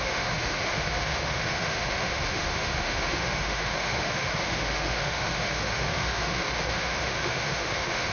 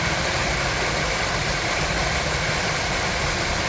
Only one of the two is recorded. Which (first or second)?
second